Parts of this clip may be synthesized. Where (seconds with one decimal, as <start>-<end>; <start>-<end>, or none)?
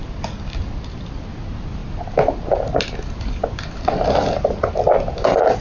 none